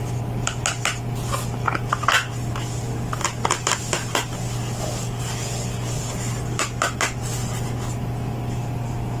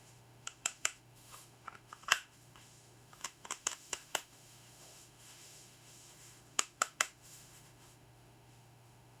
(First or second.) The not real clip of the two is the second